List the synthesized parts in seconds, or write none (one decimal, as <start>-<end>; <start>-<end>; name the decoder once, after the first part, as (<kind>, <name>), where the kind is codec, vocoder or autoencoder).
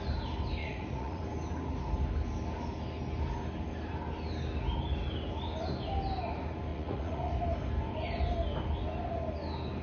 0.6-1.2 (vocoder, Vocos); 6.7-7.3